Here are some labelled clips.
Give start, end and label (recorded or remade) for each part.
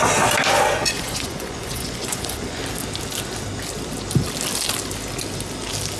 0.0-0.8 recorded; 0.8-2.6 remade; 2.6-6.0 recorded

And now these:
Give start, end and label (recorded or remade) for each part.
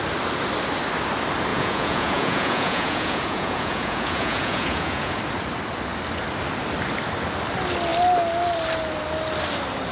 0.0-1.5 recorded; 1.5-5.2 remade; 5.2-9.9 recorded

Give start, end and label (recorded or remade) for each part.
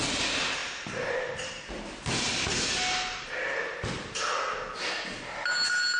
0.0-6.0 recorded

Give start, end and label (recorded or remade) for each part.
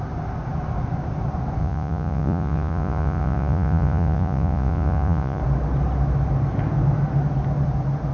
0.0-1.6 recorded; 1.6-5.4 remade; 5.4-8.1 recorded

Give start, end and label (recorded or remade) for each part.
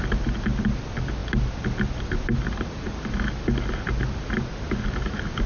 0.0-5.5 recorded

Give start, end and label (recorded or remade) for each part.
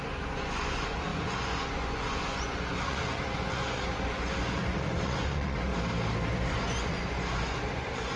0.0-5.7 remade; 5.7-6.3 recorded; 6.3-8.2 remade